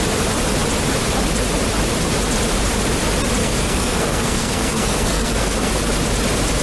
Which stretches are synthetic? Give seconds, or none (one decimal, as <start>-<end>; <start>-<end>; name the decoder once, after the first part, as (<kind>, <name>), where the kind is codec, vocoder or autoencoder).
3.4-5.7 (codec, SNAC)